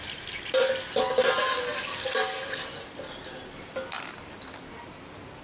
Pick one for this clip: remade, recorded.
recorded